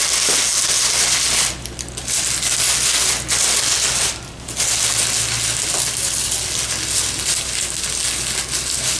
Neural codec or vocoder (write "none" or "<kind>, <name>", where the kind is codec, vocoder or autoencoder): none